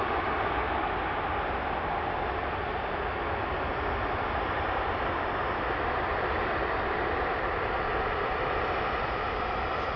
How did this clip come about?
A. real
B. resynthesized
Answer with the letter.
A